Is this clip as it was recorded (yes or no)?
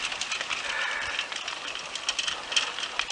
yes